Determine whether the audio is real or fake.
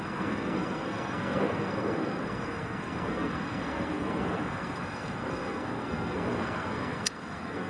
fake